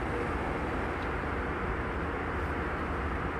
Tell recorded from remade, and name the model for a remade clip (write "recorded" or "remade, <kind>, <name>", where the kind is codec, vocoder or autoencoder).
recorded